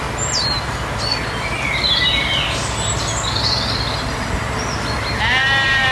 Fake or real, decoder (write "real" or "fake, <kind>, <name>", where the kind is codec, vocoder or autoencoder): real